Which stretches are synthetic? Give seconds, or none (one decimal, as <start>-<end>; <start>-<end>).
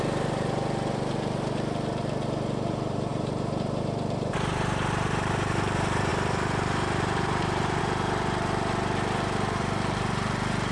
0.0-10.7